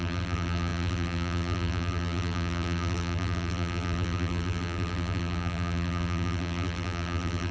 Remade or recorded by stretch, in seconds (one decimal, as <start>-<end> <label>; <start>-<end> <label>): 0.0-7.5 remade